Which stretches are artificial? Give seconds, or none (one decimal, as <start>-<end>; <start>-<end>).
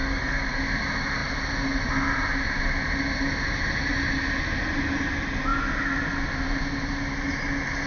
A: 0.0-0.6